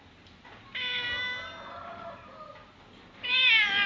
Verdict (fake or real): real